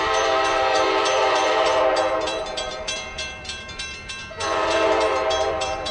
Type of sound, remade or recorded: remade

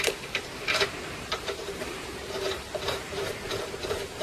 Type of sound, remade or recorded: remade